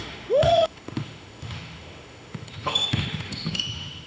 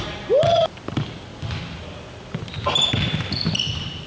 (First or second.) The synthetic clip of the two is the first